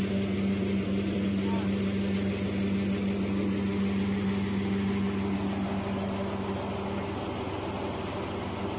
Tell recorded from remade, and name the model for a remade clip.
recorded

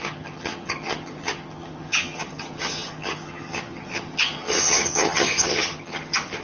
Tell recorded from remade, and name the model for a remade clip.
remade, vocoder, HiFi-GAN